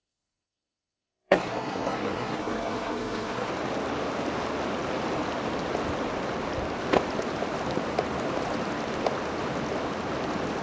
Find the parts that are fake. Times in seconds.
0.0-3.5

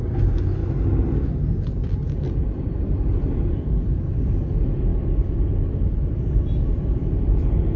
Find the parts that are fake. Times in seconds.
0.6-1.3; 2.0-4.4; 4.9-7.8